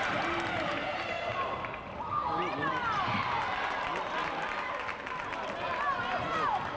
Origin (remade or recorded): remade